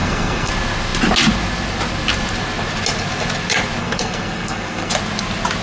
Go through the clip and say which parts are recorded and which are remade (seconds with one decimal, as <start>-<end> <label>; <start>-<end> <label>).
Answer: 0.0-0.5 remade; 0.5-3.8 recorded; 3.8-4.9 remade; 4.9-5.6 recorded